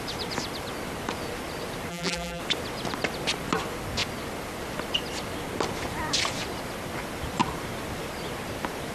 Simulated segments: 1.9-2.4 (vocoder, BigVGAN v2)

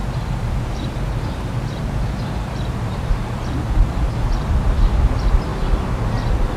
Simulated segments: 0.0-4.0 (vocoder, BigVGAN v2)